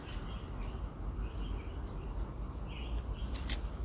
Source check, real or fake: real